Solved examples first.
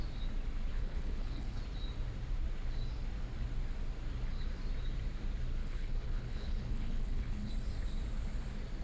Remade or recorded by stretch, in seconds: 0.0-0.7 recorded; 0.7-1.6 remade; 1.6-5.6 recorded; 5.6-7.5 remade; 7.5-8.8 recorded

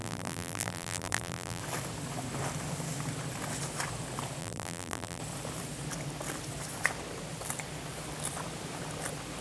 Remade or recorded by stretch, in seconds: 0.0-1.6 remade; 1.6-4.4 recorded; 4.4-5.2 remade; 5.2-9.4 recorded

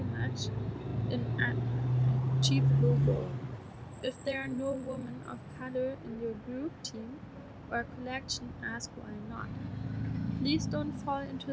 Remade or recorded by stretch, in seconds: 0.0-3.4 recorded; 3.4-5.1 remade; 5.1-11.5 recorded

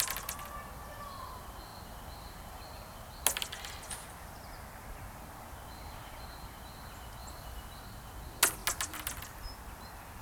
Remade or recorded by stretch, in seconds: 0.0-7.2 recorded; 7.2-7.8 remade; 7.8-10.2 recorded